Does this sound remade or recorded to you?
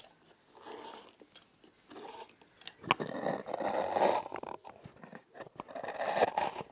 recorded